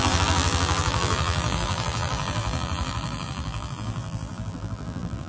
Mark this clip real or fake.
fake